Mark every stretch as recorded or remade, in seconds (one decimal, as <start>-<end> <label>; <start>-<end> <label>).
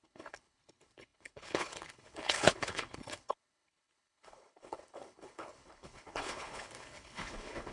0.0-7.7 remade